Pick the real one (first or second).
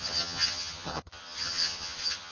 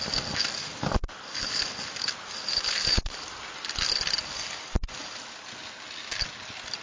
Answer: second